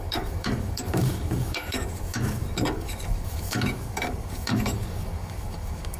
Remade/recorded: remade